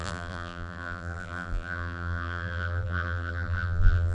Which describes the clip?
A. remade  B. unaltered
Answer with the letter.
A